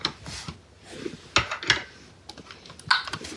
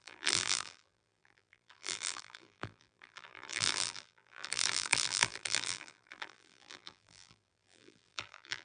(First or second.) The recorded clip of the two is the first